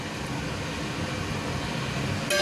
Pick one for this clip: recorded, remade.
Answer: recorded